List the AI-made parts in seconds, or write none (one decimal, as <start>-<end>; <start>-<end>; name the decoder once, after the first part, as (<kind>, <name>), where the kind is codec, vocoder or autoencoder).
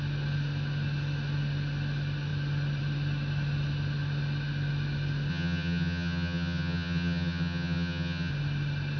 5.3-8.3 (vocoder, HiFi-GAN)